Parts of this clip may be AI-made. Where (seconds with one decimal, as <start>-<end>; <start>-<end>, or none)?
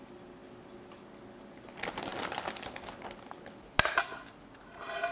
none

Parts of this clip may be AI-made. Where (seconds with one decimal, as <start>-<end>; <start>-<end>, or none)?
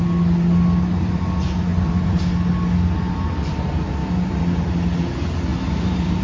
1.7-2.2; 4.0-4.7; 5.5-6.2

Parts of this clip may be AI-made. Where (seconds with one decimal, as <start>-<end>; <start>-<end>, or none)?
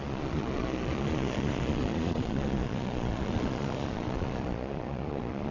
0.0-5.5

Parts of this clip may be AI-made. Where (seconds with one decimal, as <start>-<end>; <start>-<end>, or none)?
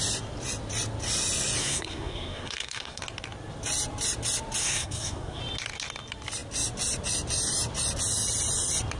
1.6-3.0; 4.6-5.4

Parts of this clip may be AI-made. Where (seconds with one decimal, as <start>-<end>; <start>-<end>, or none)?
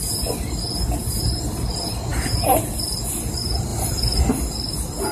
none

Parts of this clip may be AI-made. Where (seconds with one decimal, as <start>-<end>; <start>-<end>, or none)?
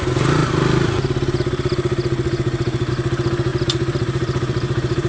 3.5-5.1